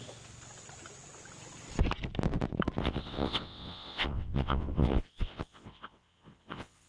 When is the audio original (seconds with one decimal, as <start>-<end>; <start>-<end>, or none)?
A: 0.0-2.8